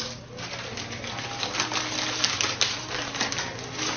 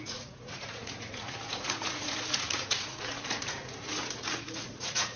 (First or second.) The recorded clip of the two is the first